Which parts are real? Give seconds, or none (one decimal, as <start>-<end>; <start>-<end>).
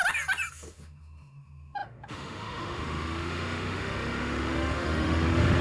0.0-0.5